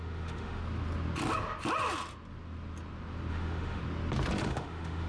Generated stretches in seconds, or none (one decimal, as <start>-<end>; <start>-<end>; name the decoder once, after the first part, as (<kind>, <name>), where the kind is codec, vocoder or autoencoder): 0.0-0.6 (autoencoder, DAC-VAE); 3.3-3.8; 4.4-5.1